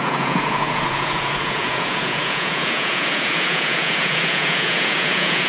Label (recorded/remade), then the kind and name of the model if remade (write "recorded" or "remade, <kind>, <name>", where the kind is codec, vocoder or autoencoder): remade, vocoder, Vocos